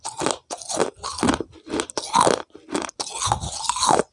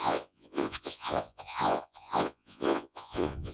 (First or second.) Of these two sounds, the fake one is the second